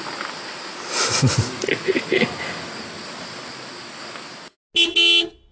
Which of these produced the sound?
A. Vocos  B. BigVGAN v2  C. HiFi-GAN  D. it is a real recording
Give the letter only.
D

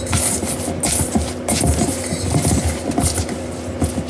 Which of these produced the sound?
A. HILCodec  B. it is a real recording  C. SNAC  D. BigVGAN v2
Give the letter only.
B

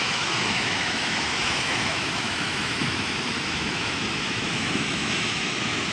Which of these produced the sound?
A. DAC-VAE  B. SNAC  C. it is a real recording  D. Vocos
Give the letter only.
A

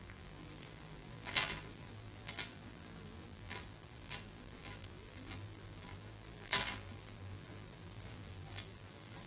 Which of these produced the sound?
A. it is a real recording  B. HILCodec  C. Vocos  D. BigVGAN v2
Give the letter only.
D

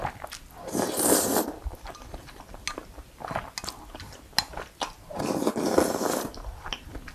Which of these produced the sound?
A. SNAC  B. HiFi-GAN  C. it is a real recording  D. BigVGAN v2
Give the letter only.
C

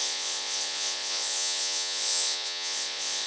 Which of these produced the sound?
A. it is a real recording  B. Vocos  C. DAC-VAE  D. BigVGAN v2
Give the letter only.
B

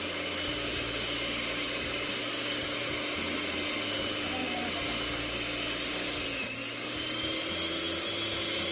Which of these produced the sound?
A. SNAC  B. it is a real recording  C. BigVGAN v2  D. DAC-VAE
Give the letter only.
B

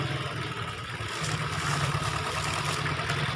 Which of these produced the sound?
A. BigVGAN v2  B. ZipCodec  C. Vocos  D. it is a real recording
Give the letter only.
D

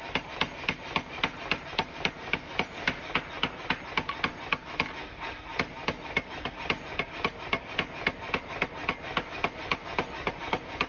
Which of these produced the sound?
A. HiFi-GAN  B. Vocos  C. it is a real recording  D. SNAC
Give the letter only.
C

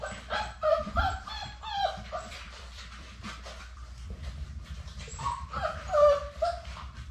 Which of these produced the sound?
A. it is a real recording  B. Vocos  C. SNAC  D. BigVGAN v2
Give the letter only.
D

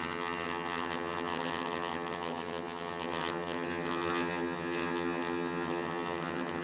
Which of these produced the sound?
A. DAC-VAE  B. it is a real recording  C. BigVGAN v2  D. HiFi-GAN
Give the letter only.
D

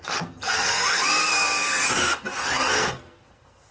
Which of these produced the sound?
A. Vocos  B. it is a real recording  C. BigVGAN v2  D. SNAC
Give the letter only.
D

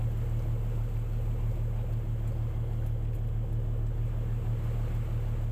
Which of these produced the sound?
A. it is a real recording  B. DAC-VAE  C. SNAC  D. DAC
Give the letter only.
A